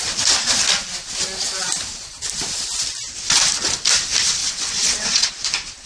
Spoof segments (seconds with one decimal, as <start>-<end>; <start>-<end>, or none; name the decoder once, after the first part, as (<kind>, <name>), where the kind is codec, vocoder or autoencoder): 4.4-5.3 (vocoder, WaveNeXt)